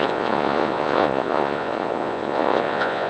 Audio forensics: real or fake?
fake